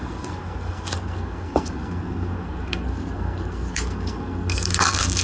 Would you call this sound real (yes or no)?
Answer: no